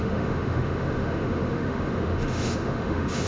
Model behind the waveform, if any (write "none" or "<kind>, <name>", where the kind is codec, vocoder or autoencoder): autoencoder, DAC-VAE